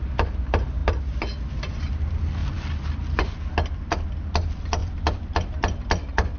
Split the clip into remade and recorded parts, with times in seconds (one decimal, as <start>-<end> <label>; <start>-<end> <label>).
0.0-2.4 recorded; 2.4-3.4 remade; 3.4-4.8 recorded; 4.8-6.4 remade